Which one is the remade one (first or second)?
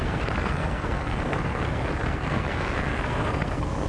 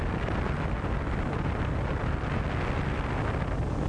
first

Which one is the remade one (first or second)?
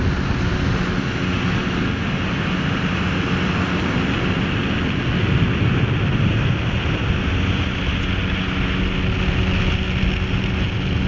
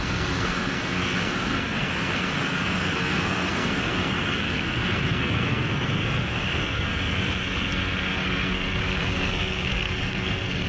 second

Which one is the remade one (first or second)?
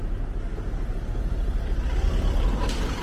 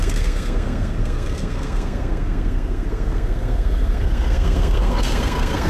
second